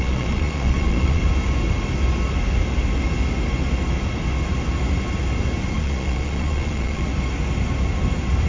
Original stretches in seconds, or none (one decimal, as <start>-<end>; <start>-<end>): 1.2-5.7; 7.1-8.5